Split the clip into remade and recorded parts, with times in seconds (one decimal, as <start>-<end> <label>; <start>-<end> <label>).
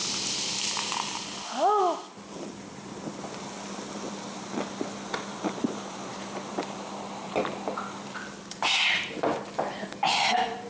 0.0-5.3 recorded; 5.3-7.4 remade; 7.4-10.7 recorded